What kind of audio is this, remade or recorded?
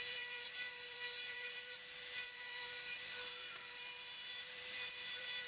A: remade